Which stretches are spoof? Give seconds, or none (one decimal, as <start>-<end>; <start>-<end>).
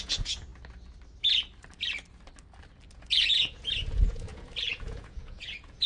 0.0-0.5; 2.9-5.9